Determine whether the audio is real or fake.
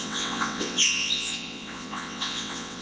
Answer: fake